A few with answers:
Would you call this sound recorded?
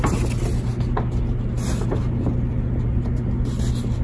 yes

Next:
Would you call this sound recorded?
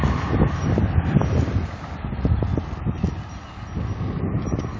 yes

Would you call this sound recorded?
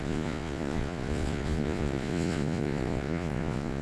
no